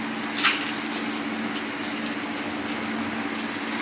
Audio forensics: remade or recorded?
recorded